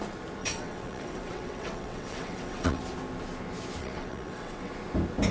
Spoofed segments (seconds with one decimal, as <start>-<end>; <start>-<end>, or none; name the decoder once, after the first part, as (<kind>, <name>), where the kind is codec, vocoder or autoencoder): 0.4-2.8 (vocoder, WaveNeXt); 3.8-4.7